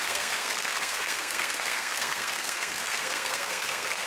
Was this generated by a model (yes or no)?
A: yes